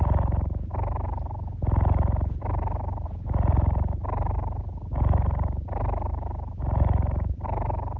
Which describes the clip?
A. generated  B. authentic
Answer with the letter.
B